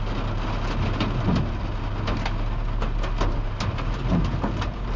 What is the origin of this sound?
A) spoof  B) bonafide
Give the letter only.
B